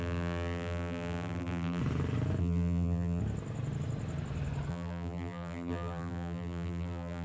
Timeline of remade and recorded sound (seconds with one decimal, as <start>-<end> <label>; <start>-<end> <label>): 0.0-1.8 remade; 1.8-2.4 recorded; 2.4-3.2 remade; 3.2-4.7 recorded; 4.7-7.2 remade